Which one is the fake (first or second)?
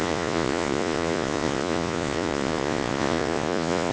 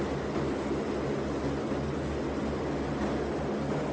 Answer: first